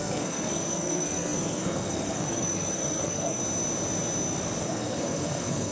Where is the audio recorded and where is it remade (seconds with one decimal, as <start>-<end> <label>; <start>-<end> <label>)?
0.0-3.4 remade; 3.4-4.6 recorded; 4.6-5.7 remade